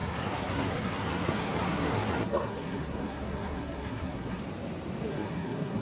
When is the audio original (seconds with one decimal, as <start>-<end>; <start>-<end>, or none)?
4.4-5.1